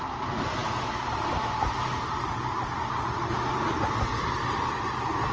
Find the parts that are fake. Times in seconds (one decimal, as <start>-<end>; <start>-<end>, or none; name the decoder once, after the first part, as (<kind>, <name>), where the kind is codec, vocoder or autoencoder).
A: none